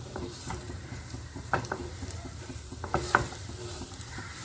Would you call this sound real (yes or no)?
no